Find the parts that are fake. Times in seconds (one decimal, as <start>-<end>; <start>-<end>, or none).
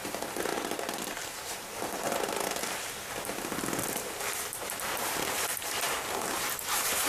0.0-0.5; 4.8-7.1